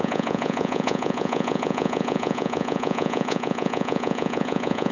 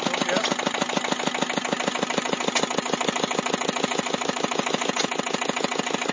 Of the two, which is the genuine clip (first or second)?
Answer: second